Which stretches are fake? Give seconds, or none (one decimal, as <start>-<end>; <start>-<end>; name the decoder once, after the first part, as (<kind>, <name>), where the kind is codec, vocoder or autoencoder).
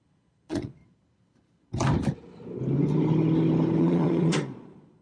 0.0-0.8 (vocoder, Vocos); 3.8-5.0